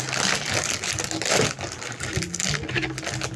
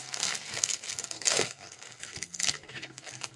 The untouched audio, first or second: first